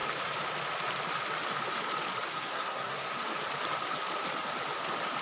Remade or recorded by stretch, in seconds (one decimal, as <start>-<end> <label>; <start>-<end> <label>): 0.0-2.3 recorded; 2.3-3.1 remade; 3.1-5.2 recorded